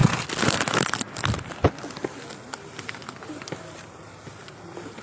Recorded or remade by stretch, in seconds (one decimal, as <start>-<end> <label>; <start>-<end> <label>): 0.0-5.0 recorded